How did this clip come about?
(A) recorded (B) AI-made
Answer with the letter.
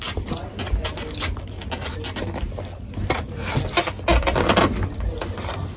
A